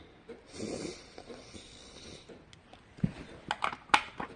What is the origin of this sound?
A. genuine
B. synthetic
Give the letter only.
A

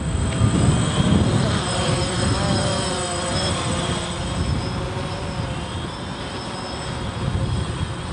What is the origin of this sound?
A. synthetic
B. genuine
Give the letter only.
B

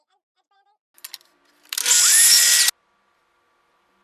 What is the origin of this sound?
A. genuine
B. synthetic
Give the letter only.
A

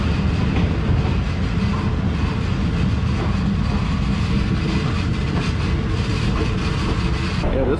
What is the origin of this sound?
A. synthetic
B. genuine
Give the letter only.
B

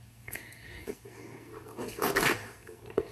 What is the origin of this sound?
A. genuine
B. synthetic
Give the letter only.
B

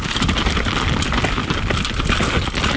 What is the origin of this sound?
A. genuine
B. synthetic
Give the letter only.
A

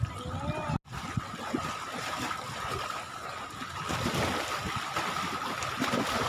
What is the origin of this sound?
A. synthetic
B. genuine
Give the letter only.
B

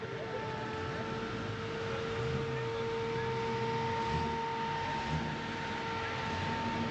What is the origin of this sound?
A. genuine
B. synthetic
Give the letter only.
A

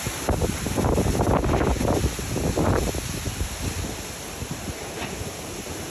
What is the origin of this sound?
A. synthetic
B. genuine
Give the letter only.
B